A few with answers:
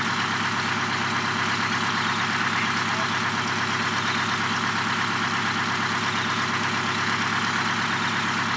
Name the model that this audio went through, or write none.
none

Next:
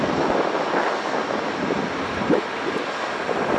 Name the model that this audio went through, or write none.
none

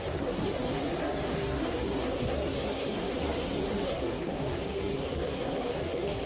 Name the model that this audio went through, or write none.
codec, SNAC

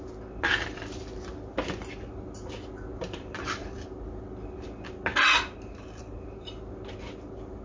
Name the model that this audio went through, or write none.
none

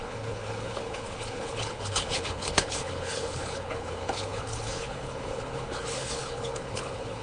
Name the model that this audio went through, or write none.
codec, HILCodec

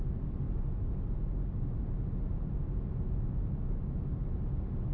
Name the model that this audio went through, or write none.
none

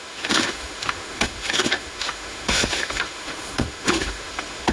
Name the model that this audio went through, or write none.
autoencoder, DAC-VAE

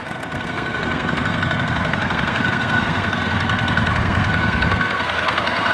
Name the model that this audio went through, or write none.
codec, SNAC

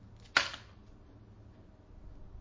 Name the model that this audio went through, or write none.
none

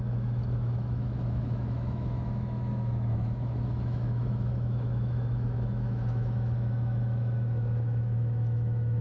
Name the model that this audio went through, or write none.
autoencoder, DAC-VAE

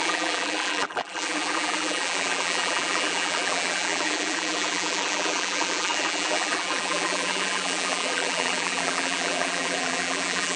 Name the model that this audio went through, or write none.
vocoder, BigVGAN v2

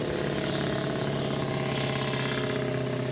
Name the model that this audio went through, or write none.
none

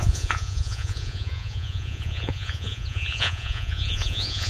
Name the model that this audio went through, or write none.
vocoder, Vocos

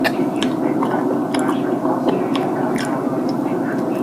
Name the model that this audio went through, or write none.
none